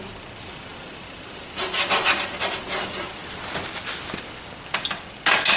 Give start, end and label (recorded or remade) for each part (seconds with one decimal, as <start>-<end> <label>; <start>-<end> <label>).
0.0-5.6 recorded